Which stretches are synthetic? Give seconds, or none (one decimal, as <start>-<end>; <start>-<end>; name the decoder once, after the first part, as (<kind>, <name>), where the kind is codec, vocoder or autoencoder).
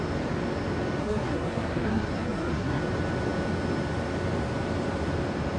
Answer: 1.0-2.8 (codec, SNAC)